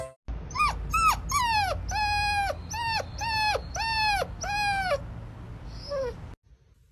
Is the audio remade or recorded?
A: recorded